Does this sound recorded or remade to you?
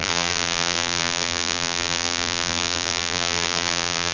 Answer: remade